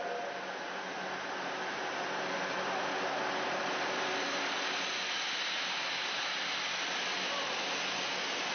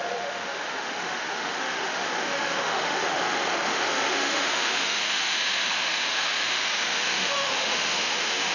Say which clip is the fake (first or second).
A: second